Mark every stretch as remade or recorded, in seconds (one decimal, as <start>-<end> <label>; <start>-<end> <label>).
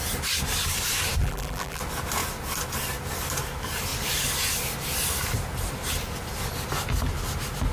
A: 0.0-1.2 recorded; 1.2-1.8 remade; 1.8-7.7 recorded